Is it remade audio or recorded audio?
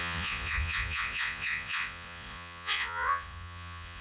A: remade